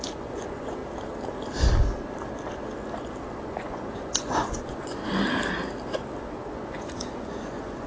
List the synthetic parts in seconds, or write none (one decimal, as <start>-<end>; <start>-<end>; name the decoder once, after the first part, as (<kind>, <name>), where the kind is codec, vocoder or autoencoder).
0.0-0.8 (vocoder, Vocos); 3.3-5.0; 6.5-7.9